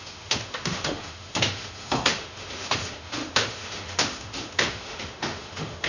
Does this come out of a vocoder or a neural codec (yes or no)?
yes